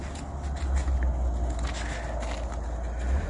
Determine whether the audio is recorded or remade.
recorded